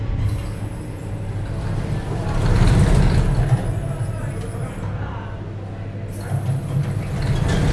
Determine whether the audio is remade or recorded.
recorded